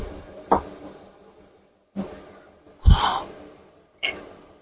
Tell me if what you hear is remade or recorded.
recorded